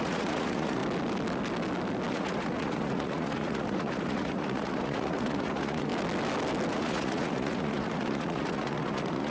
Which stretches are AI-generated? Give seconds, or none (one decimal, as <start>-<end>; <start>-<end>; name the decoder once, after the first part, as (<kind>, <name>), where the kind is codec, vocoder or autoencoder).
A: 0.0-0.8 (vocoder, Vocos); 2.1-5.9; 6.7-9.3